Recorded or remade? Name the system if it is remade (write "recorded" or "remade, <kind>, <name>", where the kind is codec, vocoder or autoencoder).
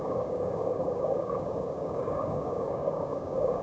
remade, codec, DAC